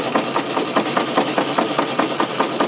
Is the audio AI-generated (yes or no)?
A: no